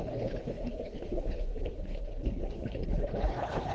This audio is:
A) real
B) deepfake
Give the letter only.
B